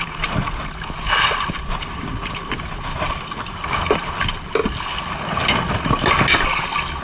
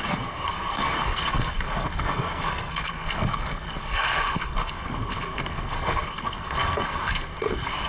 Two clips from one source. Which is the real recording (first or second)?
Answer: first